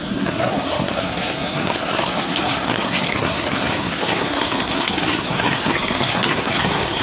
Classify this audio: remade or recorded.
remade